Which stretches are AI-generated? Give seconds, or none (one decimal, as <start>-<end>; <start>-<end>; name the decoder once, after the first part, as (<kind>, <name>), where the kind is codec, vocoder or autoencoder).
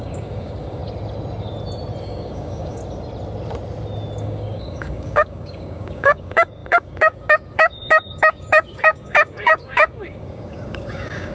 0.0-0.8 (codec, DAC); 2.0-2.8; 4.2-11.3